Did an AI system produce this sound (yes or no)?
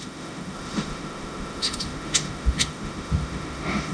yes